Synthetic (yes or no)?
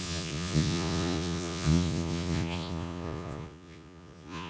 yes